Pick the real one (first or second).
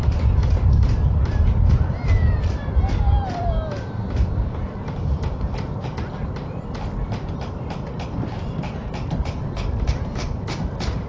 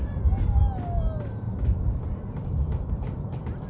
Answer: second